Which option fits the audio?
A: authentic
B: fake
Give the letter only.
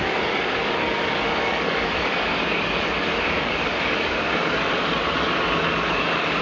B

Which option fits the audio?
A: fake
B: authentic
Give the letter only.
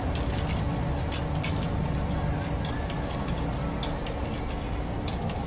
B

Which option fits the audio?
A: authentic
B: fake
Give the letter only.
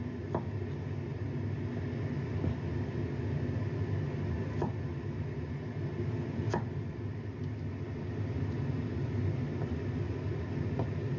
A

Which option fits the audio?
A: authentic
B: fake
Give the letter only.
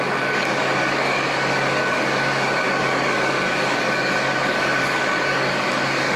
B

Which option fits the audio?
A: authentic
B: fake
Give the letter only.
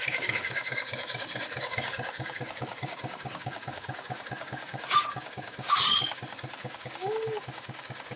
B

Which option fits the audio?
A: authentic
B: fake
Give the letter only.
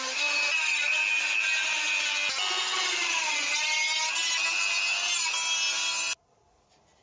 A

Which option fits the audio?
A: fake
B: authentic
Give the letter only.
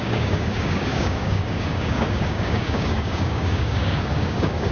A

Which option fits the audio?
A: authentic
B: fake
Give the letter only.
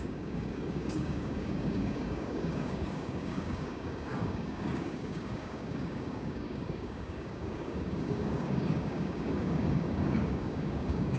B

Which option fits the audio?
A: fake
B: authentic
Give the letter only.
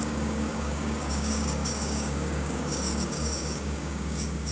A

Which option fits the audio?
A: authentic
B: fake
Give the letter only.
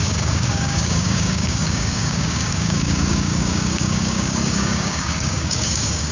B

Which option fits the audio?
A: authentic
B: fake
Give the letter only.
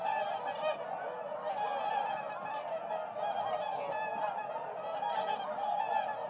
A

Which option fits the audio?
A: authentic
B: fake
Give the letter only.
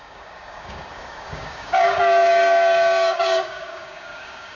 B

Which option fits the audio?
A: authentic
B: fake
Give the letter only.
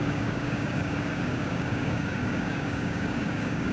B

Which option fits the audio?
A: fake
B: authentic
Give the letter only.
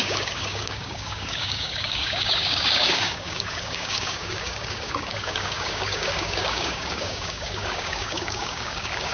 A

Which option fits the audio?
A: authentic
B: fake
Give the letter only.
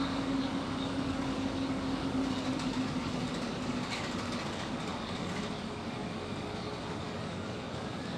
B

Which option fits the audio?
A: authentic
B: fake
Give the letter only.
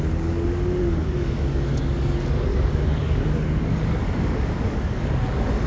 B